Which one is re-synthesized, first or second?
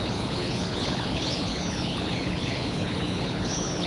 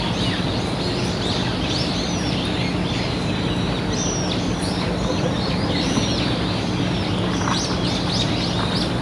first